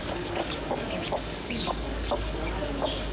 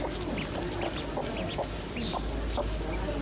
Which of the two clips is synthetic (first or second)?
first